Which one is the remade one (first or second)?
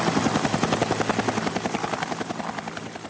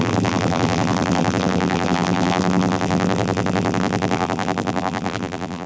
second